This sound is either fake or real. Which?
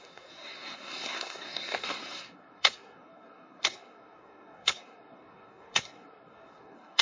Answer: fake